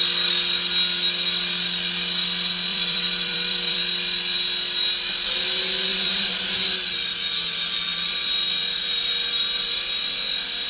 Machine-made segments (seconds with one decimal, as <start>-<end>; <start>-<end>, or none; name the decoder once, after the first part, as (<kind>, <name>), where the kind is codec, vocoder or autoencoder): 2.7-3.8 (vocoder, BigVGAN v2); 5.9-6.5; 7.9-9.1